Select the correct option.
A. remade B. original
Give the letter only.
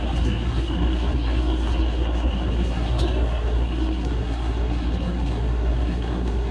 A